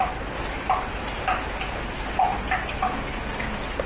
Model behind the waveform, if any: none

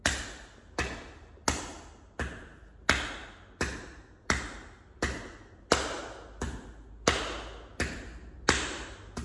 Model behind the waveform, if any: none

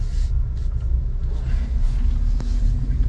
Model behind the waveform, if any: none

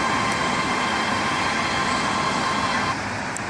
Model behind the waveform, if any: none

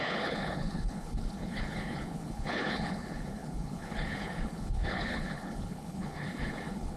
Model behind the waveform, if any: codec, HILCodec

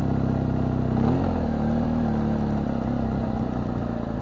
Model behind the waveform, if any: none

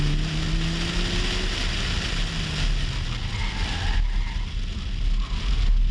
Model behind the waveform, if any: none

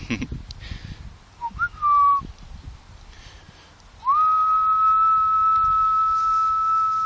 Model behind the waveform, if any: none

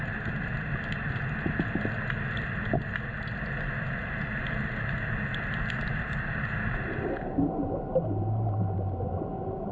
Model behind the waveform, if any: none